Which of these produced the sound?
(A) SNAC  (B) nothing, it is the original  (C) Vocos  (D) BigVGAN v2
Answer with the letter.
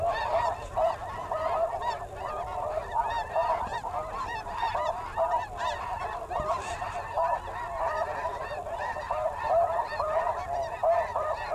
D